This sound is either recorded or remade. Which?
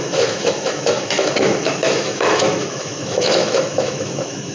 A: remade